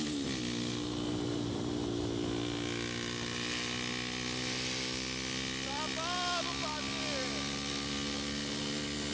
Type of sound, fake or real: real